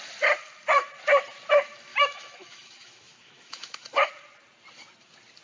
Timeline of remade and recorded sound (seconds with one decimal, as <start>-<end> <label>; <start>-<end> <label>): 0.0-1.9 recorded; 1.9-4.1 remade; 4.1-5.4 recorded